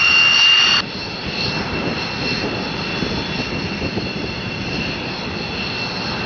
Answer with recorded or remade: recorded